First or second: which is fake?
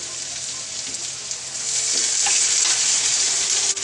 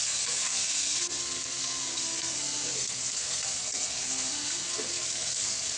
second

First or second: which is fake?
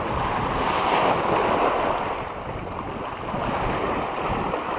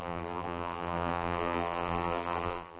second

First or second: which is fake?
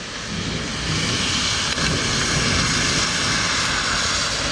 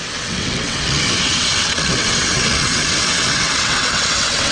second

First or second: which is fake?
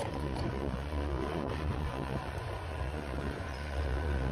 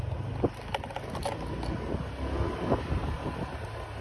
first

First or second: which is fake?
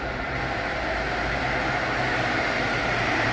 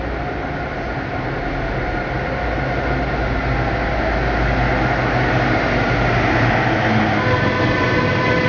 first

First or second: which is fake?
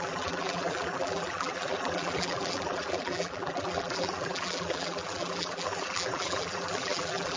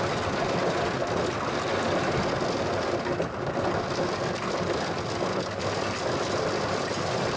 first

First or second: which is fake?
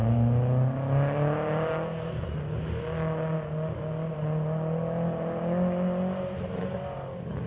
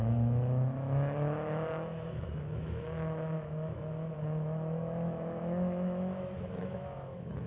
second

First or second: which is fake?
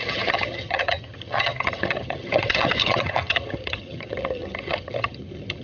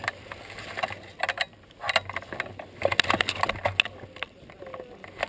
first